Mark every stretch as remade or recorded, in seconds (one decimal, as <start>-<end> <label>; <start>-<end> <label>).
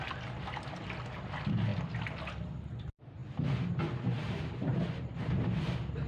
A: 0.0-1.7 recorded; 1.7-2.8 remade; 2.8-6.1 recorded